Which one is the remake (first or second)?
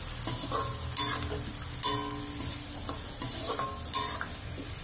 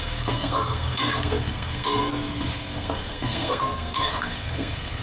second